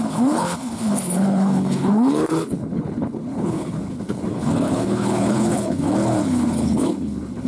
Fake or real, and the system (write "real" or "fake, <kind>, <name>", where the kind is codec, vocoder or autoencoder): fake, codec, HILCodec